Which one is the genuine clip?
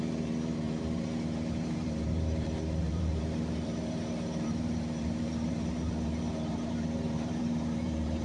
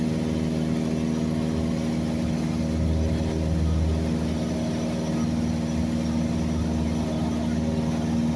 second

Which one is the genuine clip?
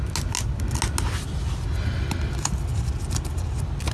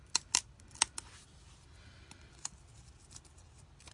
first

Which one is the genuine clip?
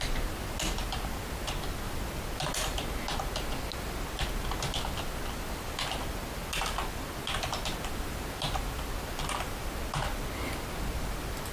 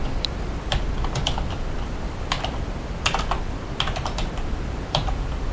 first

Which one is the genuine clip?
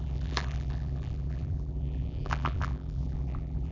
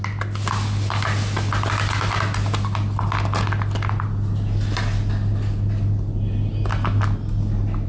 second